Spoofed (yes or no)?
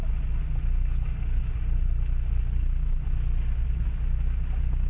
no